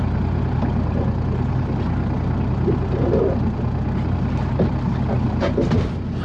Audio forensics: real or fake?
real